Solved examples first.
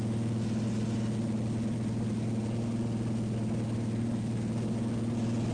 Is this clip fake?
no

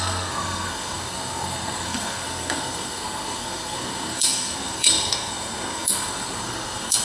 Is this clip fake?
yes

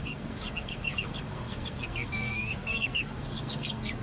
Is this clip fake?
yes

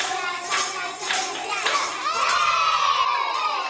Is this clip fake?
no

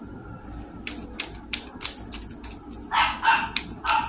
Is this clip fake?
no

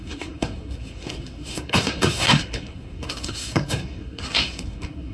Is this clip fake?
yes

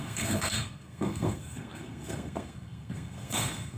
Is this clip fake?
yes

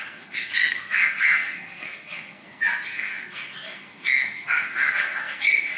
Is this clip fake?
yes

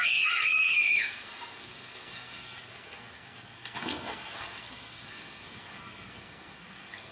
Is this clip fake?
yes